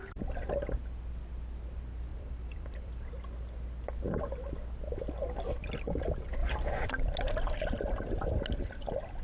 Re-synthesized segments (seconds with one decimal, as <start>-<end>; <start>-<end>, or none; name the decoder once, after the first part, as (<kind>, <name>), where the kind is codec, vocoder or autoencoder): 2.1-3.1 (vocoder, BigVGAN v2)